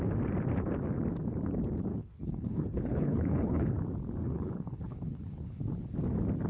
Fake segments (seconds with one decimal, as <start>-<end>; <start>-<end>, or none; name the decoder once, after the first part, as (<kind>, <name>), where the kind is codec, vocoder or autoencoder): 1.9-3.7 (codec, HILCodec); 4.2-5.6